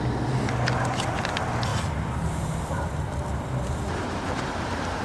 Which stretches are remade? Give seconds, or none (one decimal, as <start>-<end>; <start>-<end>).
1.7-5.0